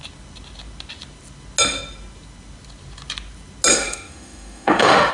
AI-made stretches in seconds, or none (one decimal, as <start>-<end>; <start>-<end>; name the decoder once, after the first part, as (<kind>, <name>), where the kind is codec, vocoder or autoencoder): 3.7-5.1 (autoencoder, DAC-VAE)